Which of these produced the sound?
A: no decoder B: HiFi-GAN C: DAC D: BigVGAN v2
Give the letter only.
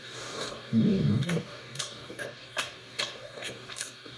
C